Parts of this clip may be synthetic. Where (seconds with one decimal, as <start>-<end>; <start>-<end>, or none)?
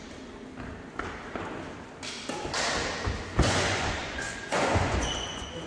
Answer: 3.4-5.7